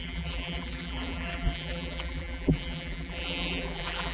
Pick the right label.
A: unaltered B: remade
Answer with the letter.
B